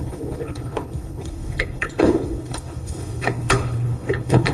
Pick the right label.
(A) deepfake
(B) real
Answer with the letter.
A